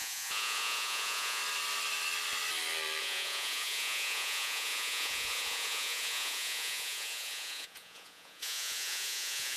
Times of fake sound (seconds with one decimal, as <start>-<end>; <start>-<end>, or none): 0.0-1.4; 3.0-9.6